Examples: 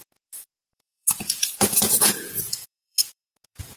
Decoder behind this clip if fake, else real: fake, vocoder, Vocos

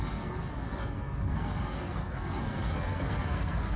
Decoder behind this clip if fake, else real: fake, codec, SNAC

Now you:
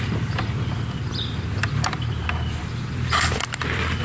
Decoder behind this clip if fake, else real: fake, vocoder, BigVGAN v2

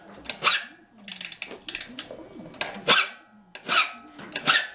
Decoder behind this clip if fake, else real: real